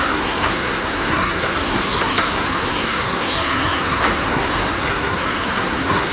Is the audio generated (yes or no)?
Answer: yes